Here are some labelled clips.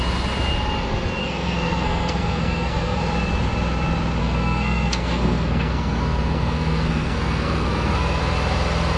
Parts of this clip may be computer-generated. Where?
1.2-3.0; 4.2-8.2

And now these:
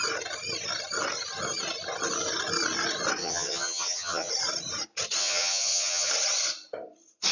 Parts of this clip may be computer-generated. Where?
3.2-4.3; 5.2-6.1

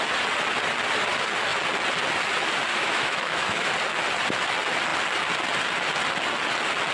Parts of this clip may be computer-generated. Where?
2.7-3.7

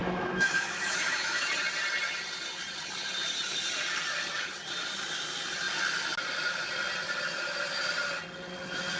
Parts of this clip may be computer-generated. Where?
0.0-1.5

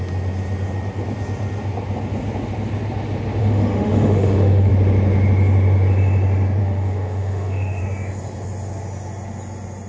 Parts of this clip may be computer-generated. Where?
3.4-4.7; 6.6-7.8

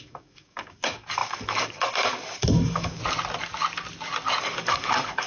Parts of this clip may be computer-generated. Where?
0.0-3.0; 4.4-5.3